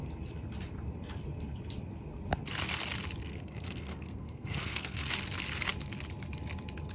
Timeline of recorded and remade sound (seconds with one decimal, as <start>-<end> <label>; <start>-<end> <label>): 0.0-3.2 recorded; 3.2-5.1 remade; 5.1-6.9 recorded